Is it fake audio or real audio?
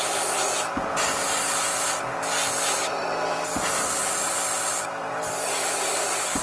real